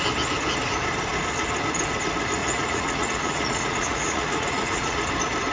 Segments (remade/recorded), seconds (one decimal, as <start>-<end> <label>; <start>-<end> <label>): 0.0-2.4 recorded; 2.4-5.1 remade; 5.1-5.5 recorded